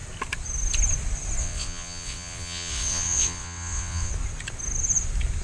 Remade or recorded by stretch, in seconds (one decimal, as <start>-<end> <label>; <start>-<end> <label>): 0.0-1.4 recorded; 1.4-4.1 remade; 4.1-5.4 recorded